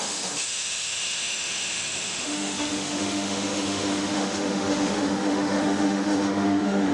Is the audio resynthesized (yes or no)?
yes